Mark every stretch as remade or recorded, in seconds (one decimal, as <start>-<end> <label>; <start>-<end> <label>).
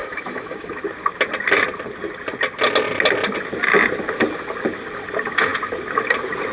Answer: 0.0-0.8 remade; 0.8-6.5 recorded